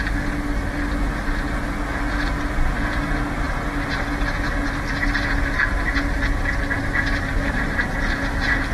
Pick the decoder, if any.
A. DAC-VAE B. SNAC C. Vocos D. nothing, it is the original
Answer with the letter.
D